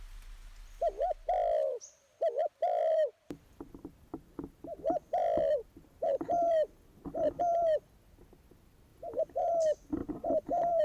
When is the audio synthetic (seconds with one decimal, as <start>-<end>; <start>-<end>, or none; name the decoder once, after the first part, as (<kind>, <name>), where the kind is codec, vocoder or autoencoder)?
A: 2.8-7.4 (vocoder, BigVGAN v2); 8.9-9.4; 10.0-10.8

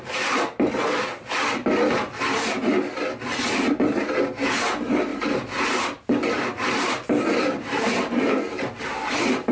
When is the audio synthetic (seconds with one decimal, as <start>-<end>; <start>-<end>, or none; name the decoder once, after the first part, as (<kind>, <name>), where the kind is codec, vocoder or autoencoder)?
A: 5.1-8.8 (vocoder, BigVGAN v2)

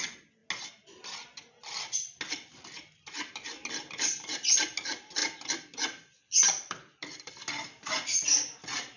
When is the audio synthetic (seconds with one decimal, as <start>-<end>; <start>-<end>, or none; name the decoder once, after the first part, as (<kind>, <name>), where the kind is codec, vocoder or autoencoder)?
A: 5.2-7.3 (vocoder, BigVGAN v2)

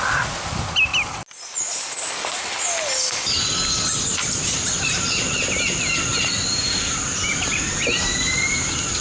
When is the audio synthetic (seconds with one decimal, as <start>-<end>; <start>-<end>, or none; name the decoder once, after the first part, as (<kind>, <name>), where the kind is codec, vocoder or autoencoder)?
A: 7.8-9.0 (vocoder, BigVGAN v2)

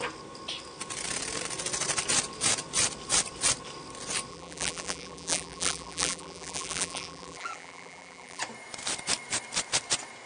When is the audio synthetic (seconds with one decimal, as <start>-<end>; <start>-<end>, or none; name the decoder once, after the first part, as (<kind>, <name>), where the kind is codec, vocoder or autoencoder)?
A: 4.3-8.4 (vocoder, BigVGAN v2)

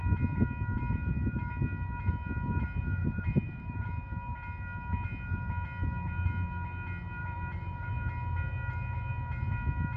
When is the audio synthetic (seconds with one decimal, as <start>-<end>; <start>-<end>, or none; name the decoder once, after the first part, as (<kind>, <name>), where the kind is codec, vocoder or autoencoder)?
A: 3.0-3.9 (vocoder, BigVGAN v2); 7.2-7.9